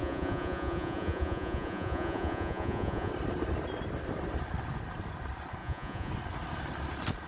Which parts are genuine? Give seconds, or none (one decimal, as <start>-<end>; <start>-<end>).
3.1-5.6; 6.1-7.3